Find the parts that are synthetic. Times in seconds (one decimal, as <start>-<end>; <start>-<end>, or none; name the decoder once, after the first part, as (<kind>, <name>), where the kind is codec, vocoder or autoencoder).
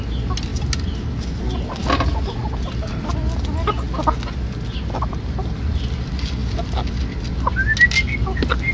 none